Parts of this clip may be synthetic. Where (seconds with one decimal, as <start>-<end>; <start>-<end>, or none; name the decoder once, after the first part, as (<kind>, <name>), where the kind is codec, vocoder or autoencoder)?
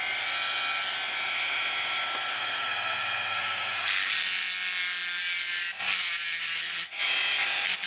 2.3-4.1 (codec, SNAC)